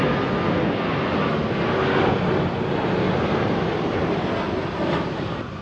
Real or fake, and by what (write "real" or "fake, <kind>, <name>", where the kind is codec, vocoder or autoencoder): real